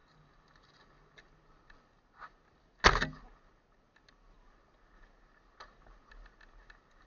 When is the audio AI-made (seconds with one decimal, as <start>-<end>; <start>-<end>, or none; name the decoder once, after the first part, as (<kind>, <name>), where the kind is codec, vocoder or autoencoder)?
none